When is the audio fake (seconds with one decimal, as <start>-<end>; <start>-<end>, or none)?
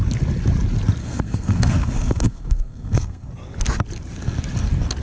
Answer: 1.0-3.3